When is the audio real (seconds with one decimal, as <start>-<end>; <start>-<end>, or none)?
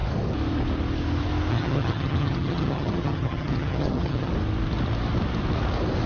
0.0-1.5; 4.3-6.1